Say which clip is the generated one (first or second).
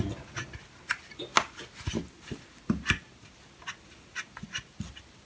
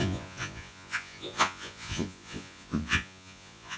second